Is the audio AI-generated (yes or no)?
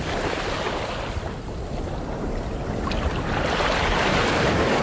no